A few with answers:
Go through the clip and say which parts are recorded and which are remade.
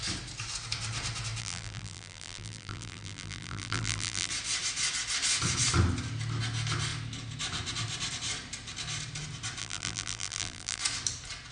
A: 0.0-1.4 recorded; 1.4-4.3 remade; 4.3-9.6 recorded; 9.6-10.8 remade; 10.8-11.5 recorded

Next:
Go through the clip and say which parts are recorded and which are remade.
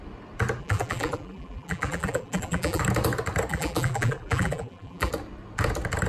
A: 0.0-0.6 recorded; 0.6-2.8 remade; 2.8-3.5 recorded; 3.5-5.1 remade; 5.1-6.1 recorded